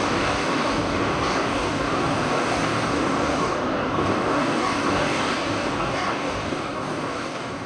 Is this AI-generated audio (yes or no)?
yes